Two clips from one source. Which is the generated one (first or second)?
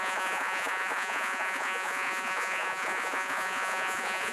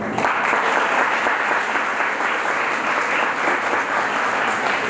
first